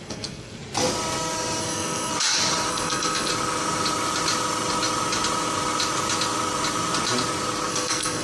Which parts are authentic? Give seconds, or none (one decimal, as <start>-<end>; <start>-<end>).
0.6-1.6; 2.1-2.7; 3.3-7.7